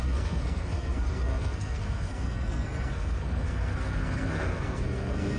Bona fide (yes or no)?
no